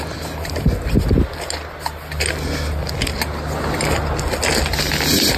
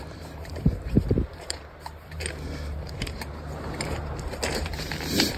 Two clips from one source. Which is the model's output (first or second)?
second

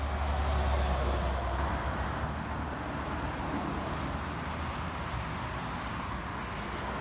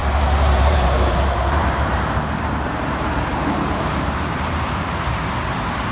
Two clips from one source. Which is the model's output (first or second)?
second